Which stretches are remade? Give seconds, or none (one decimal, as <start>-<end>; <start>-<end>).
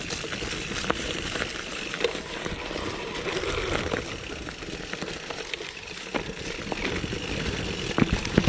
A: none